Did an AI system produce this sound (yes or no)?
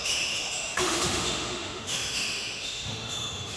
yes